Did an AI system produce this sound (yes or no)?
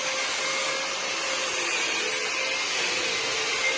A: no